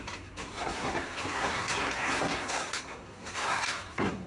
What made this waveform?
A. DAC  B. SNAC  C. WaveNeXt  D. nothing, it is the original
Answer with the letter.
B